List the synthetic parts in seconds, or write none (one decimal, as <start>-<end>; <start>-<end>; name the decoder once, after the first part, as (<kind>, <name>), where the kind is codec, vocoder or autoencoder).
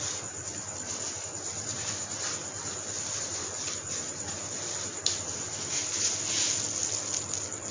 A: none